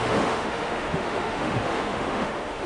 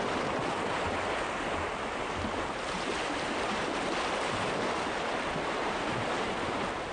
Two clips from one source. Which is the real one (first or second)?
second